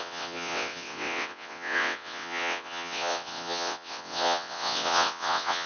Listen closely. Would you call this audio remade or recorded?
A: remade